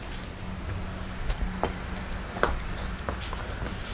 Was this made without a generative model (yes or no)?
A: yes